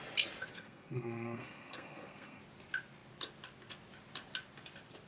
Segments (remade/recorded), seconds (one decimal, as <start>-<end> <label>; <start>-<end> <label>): 0.0-0.5 recorded; 0.5-2.4 remade; 2.4-5.1 recorded